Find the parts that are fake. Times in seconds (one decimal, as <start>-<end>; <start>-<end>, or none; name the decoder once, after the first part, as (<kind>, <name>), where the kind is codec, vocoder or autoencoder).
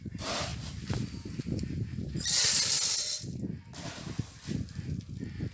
none